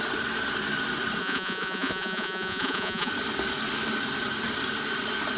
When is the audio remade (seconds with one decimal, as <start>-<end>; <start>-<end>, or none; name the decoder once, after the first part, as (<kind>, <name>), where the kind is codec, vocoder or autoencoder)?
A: 1.2-3.1 (vocoder, Vocos)